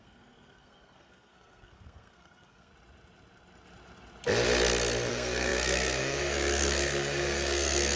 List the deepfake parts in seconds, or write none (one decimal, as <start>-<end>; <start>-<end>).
0.0-2.7; 5.1-8.0

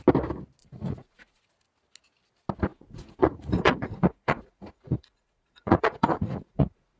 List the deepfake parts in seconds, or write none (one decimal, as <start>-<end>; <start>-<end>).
0.6-1.4; 2.7-7.0

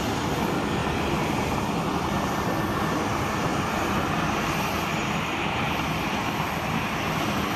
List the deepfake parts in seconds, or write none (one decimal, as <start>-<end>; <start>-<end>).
none

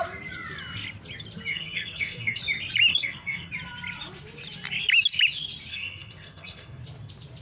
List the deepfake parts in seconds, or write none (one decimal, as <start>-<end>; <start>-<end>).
1.5-2.4; 2.9-3.5; 5.7-6.8

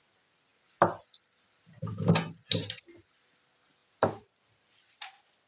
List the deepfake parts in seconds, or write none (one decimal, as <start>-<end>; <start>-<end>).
none